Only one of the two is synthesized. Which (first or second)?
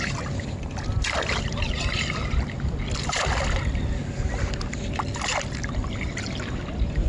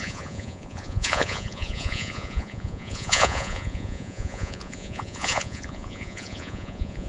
second